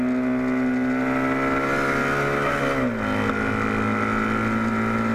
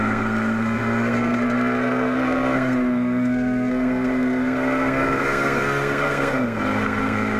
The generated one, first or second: second